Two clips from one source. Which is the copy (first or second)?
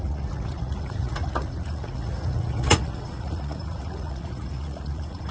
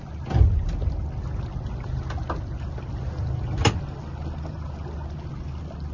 first